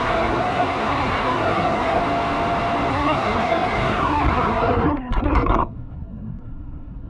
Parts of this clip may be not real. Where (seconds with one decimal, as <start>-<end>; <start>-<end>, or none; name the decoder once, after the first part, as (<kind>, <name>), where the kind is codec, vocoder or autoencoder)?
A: 0.0-2.0 (codec, SNAC); 2.9-7.1